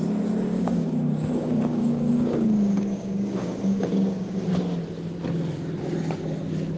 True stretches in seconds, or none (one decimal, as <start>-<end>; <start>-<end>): 0.0-0.5; 4.6-6.8

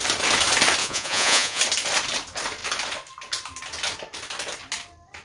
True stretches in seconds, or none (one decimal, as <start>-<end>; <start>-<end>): 0.0-0.8; 1.6-5.2

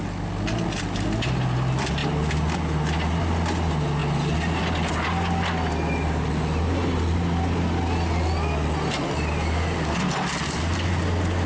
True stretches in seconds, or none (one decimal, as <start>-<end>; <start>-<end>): 0.0-11.5

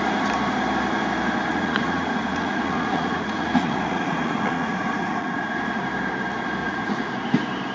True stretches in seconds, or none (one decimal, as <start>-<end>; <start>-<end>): 0.0-1.5; 5.8-6.6; 7.1-7.7

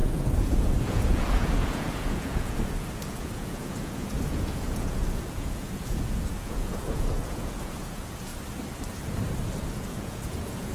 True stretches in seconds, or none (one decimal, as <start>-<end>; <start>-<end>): 8.3-9.6